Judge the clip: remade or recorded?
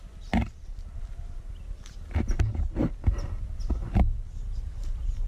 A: recorded